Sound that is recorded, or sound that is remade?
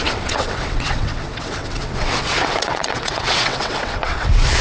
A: remade